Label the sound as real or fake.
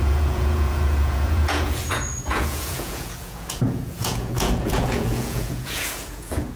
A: fake